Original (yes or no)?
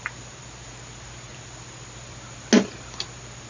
yes